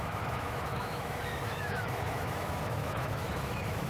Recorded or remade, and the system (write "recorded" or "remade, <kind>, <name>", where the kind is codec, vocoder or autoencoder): remade, autoencoder, DAC-VAE